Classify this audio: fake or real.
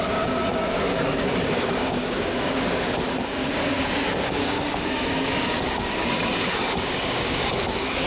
fake